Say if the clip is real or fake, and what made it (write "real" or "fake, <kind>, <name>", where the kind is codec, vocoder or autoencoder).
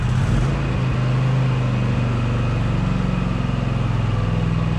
real